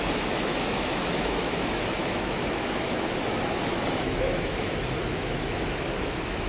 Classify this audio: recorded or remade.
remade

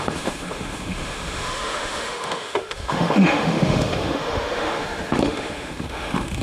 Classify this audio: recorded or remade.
remade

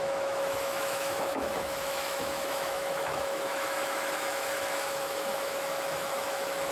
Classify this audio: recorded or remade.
remade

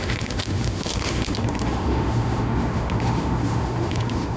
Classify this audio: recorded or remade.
remade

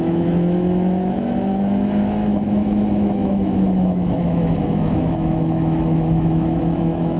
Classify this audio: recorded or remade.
remade